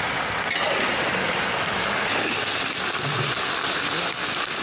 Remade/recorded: recorded